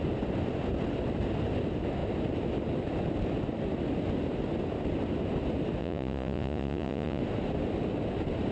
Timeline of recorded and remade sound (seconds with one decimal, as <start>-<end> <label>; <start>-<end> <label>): 0.0-5.8 recorded; 5.8-7.2 remade; 7.2-8.5 recorded